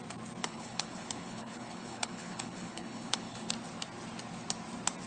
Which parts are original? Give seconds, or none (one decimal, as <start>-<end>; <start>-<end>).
0.0-0.4; 3.5-5.1